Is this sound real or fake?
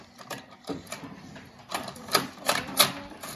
fake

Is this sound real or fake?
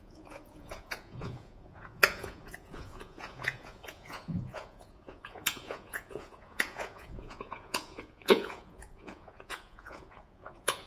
fake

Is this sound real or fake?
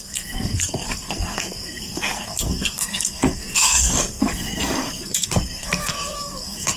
fake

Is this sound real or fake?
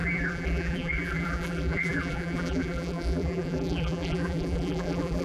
fake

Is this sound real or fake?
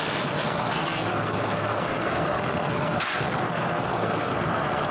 fake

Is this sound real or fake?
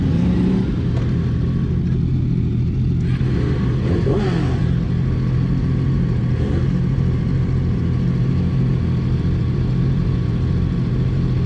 real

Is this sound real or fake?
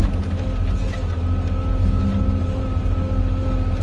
real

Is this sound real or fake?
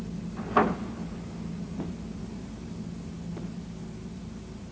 real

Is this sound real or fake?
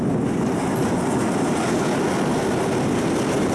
real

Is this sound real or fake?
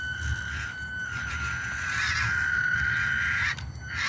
real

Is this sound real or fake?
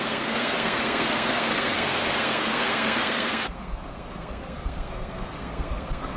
fake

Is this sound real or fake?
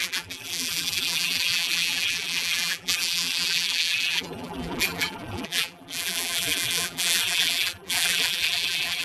fake